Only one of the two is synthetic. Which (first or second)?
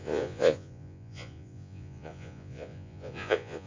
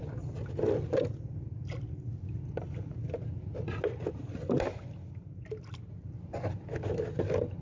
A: first